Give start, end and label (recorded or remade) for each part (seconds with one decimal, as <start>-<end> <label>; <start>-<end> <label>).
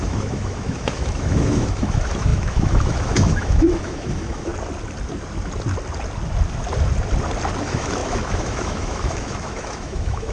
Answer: 0.0-4.5 remade; 4.5-7.6 recorded; 7.6-10.3 remade